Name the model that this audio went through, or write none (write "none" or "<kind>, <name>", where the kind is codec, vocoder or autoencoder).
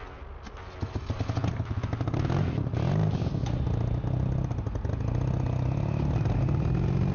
none